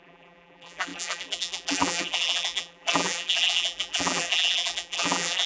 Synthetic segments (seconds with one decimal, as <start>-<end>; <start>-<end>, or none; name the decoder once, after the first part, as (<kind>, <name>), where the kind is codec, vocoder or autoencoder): 0.0-5.5 (vocoder, BigVGAN v2)